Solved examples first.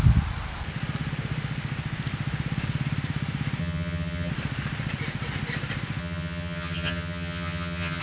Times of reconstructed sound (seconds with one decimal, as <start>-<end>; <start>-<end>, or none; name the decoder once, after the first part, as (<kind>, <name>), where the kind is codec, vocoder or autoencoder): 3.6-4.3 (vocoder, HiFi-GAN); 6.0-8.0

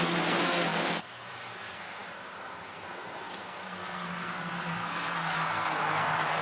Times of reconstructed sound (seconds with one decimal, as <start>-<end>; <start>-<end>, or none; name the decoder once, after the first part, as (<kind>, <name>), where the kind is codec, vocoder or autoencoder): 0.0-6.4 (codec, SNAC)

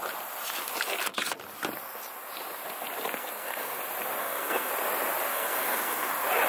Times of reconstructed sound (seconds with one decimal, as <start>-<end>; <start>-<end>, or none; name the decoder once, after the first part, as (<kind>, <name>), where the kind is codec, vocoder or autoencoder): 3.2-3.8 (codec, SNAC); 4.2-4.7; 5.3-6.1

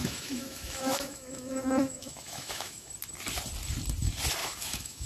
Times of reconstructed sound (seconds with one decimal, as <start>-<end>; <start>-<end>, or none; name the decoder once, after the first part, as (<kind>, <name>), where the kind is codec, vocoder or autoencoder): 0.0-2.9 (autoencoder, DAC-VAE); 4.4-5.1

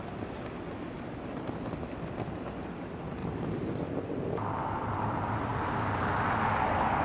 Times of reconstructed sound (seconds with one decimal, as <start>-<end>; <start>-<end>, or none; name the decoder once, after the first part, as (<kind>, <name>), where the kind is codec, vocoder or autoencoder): none

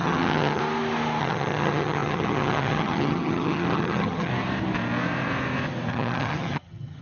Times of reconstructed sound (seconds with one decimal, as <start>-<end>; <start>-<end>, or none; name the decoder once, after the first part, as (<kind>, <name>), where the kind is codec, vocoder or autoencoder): 0.0-0.6 (vocoder, HiFi-GAN); 1.2-4.3; 5.9-7.0